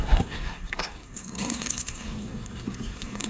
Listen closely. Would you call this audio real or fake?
fake